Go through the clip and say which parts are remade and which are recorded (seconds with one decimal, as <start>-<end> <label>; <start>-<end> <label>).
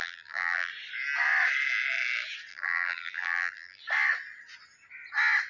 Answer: 0.0-0.7 remade; 0.7-2.5 recorded; 2.5-3.8 remade; 3.8-5.5 recorded